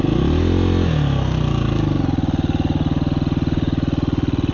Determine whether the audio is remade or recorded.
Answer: recorded